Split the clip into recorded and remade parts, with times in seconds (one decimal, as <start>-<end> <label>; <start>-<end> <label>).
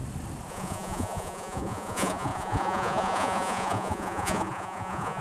0.0-0.5 recorded; 0.5-5.2 remade